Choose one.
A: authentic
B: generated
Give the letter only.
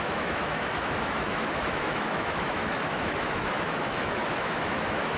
B